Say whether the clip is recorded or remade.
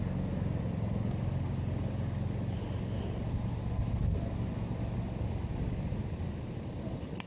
recorded